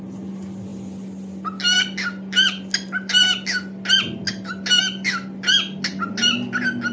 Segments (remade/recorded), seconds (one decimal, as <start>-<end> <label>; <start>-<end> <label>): 0.0-6.9 recorded